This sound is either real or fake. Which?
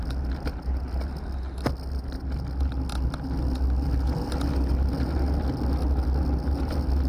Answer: real